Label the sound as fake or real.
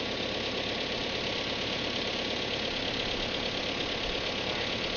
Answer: real